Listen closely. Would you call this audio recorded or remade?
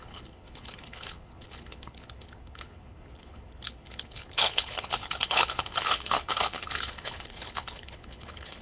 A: remade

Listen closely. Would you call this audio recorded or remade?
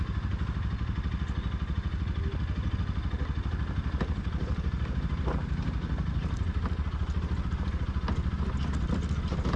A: recorded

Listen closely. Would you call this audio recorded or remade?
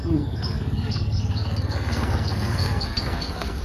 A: remade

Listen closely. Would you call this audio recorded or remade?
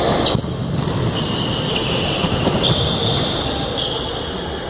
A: recorded